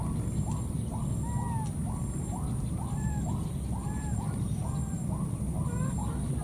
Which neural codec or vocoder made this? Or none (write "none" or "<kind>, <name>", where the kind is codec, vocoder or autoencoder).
none